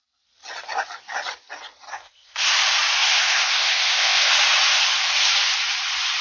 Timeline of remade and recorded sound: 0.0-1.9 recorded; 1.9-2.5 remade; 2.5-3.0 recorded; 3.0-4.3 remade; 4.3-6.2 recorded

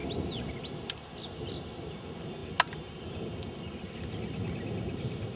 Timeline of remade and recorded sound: 0.0-5.4 recorded

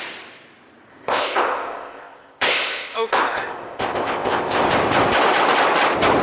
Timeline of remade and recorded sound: 0.0-0.9 recorded; 0.9-4.6 remade; 4.6-6.2 recorded

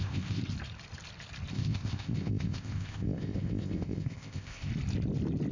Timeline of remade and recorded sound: 0.0-0.4 remade; 0.4-1.5 recorded; 1.5-4.7 remade; 4.7-5.5 recorded

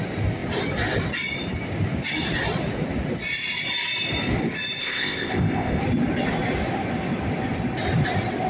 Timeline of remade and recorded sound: 0.0-4.8 recorded; 4.8-5.8 remade; 5.8-8.5 recorded

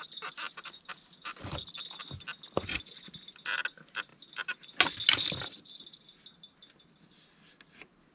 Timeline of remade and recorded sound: 0.0-8.1 recorded